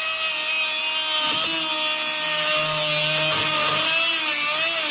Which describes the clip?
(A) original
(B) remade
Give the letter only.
A